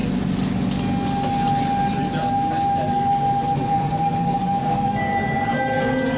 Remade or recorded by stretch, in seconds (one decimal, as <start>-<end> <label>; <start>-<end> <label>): 0.0-3.7 recorded; 3.7-6.2 remade